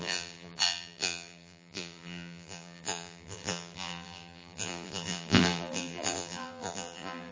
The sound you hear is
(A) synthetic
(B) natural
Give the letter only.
A